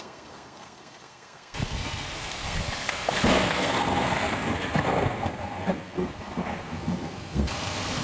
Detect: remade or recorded remade